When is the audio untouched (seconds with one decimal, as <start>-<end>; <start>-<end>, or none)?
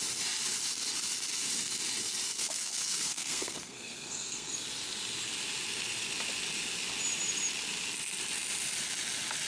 0.0-2.4; 4.5-9.5